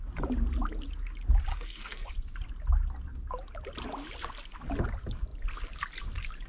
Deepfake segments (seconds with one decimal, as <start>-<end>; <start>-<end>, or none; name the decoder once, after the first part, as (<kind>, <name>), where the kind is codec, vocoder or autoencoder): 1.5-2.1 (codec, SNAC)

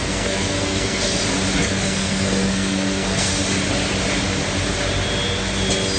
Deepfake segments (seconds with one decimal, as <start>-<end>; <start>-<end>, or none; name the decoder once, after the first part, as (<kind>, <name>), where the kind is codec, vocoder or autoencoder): 0.0-1.2 (codec, SNAC); 1.6-3.4

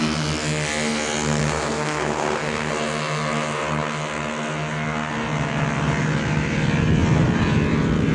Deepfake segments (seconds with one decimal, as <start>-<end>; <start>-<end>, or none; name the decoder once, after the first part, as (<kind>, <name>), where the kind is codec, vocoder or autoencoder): 1.4-2.7 (codec, SNAC)

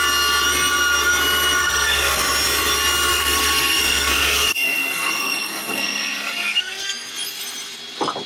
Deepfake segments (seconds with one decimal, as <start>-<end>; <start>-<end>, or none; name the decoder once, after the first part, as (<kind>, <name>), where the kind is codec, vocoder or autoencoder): 1.6-2.2 (codec, SNAC); 3.1-7.1

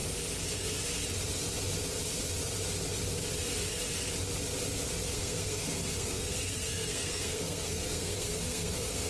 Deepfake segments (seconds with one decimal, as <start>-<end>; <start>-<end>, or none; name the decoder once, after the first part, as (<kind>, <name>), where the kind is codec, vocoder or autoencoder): 5.1-9.1 (codec, SNAC)

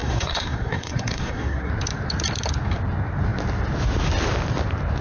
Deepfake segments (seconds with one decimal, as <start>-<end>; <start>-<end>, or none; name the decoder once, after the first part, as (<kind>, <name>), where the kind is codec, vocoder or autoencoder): 0.0-1.7 (codec, SNAC)

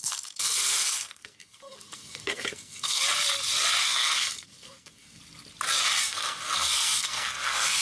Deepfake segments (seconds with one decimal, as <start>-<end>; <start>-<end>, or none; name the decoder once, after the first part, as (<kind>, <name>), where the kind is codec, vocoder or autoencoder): 0.0-3.0 (codec, SNAC); 3.8-5.2; 6.0-7.8

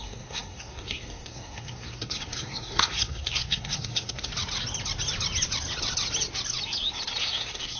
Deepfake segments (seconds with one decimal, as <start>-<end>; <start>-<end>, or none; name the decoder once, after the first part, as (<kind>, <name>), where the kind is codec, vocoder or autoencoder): 0.0-4.3 (codec, SNAC); 7.2-7.8